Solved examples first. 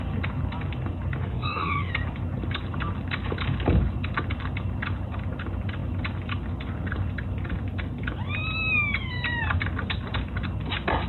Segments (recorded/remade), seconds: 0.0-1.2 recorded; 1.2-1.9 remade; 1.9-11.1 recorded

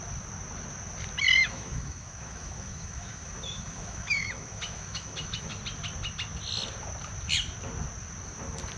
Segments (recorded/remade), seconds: 0.0-1.4 recorded; 1.4-5.6 remade; 5.6-8.8 recorded

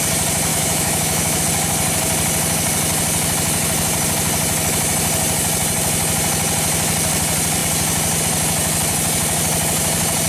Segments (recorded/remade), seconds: 0.0-0.5 recorded; 0.5-1.4 remade; 1.4-10.3 recorded

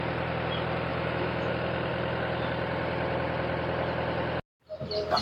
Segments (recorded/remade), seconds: 0.0-0.9 recorded; 0.9-1.5 remade; 1.5-5.2 recorded

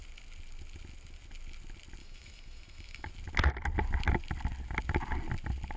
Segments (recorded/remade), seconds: 0.0-2.0 recorded; 2.0-3.1 remade; 3.1-5.8 recorded

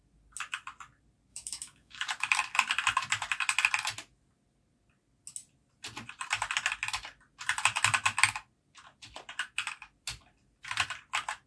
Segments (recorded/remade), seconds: 0.0-1.3 recorded; 1.3-2.0 remade; 2.0-11.5 recorded